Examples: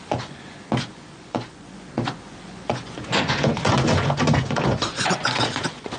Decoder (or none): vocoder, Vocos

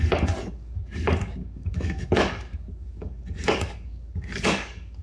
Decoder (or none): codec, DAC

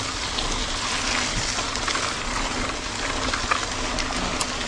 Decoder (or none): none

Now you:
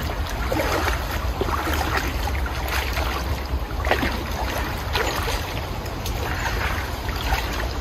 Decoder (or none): none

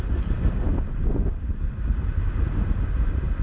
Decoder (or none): none